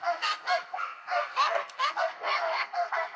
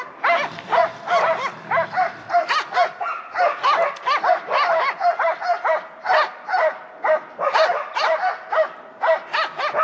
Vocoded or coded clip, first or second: first